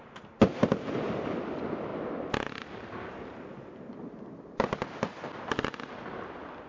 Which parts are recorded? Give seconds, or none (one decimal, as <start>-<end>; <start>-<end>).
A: 0.0-6.7